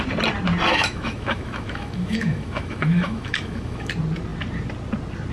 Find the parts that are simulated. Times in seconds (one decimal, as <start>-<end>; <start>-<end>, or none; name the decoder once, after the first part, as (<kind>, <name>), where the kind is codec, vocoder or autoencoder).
0.7-3.9 (autoencoder, DAC-VAE)